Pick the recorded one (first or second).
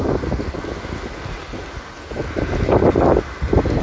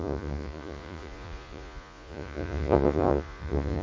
first